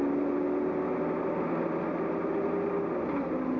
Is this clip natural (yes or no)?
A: yes